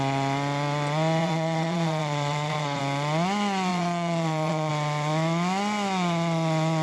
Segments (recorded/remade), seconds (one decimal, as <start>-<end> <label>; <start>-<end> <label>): 0.0-1.2 recorded; 1.2-2.8 remade; 2.8-3.7 recorded; 3.7-4.7 remade; 4.7-6.8 recorded